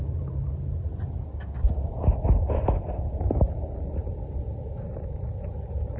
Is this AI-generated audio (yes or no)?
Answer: no